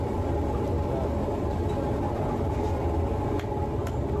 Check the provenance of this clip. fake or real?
real